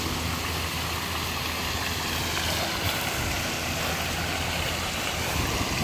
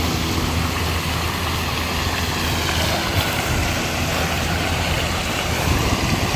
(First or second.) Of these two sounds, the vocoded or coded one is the first